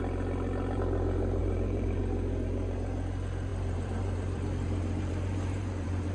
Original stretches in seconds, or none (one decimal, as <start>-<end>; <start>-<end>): 0.0-1.4; 2.0-3.5